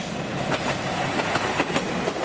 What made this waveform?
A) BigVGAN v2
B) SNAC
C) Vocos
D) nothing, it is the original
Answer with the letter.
D